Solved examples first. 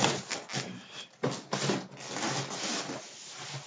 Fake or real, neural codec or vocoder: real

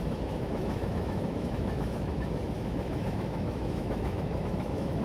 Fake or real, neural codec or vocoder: fake, autoencoder, DAC-VAE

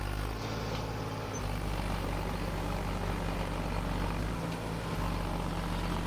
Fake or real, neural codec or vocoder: real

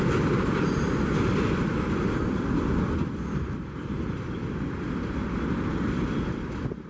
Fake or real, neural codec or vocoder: real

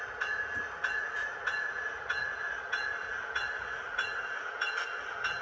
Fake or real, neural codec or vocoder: fake, vocoder, Vocos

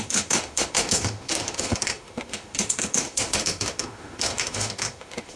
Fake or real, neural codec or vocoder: fake, autoencoder, DAC-VAE